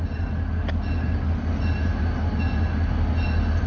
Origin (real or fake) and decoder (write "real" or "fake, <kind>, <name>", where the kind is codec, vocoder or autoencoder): real